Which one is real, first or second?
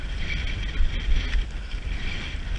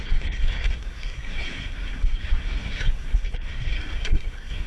first